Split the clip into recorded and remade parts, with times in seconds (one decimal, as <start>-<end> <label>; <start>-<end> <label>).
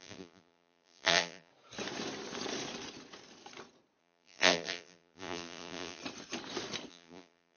0.0-1.5 remade; 1.5-4.0 recorded; 4.0-6.0 remade; 6.0-6.9 recorded; 6.9-7.6 remade